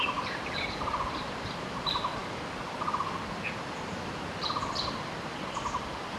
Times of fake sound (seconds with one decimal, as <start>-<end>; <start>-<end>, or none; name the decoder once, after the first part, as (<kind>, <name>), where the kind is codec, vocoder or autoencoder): none